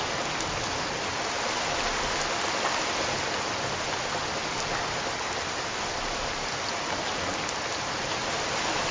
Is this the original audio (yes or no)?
yes